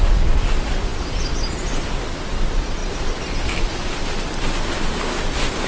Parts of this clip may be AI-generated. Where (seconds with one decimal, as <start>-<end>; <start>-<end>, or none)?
none